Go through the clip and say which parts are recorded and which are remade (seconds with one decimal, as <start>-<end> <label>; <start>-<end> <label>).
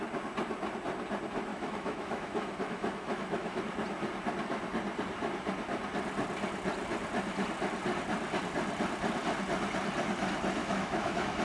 0.0-1.5 recorded; 1.5-3.6 remade; 3.6-10.6 recorded; 10.6-11.4 remade